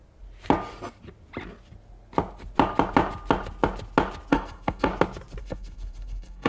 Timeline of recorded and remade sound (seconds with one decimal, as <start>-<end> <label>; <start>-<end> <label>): 0.0-4.3 recorded; 4.3-4.9 remade; 4.9-5.4 recorded; 5.4-6.5 remade